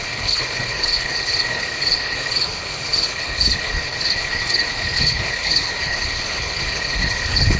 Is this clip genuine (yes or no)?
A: no